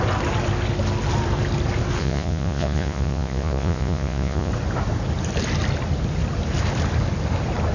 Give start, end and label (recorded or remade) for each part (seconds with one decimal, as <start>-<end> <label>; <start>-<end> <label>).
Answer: 0.0-2.0 recorded; 2.0-4.5 remade; 4.5-7.7 recorded